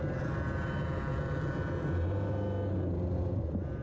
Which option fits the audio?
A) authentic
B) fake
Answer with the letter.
A